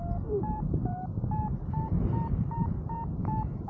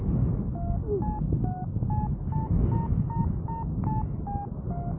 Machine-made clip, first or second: first